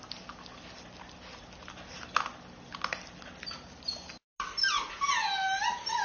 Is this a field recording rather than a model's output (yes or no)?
yes